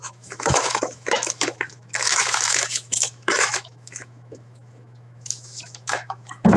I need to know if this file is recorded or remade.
remade